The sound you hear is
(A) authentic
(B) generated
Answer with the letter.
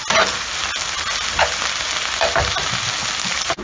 A